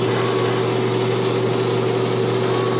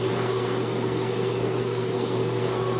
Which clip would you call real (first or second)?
first